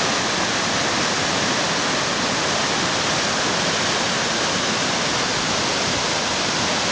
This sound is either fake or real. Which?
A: real